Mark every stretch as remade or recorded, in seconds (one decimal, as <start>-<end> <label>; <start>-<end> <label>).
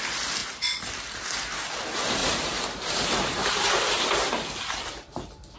0.0-2.2 recorded; 2.2-4.1 remade; 4.1-5.6 recorded